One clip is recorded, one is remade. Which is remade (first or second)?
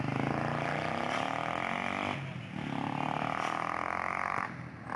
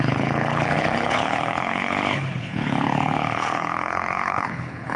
second